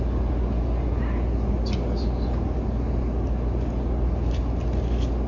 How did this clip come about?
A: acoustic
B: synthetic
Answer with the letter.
A